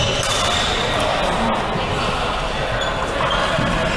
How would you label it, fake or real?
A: real